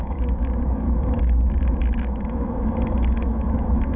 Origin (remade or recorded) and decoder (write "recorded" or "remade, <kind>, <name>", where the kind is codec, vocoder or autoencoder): remade, autoencoder, DAC-VAE